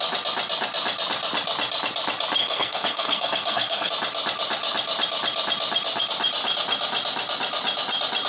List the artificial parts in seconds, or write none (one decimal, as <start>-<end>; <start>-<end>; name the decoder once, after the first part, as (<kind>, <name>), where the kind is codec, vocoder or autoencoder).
2.4-3.9 (codec, SNAC)